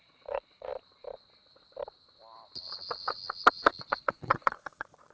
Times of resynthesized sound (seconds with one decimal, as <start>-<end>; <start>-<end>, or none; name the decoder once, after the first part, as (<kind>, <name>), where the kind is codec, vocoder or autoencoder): 0.0-0.7 (vocoder, Vocos); 3.8-5.1